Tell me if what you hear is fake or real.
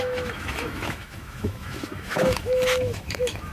fake